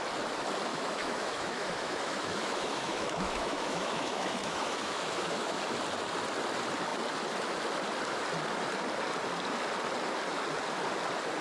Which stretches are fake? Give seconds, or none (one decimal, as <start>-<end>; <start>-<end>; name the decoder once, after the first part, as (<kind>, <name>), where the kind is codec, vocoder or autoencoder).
0.7-5.6 (autoencoder, DAC-VAE)